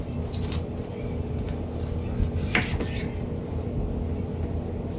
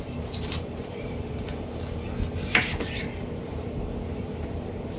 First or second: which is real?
first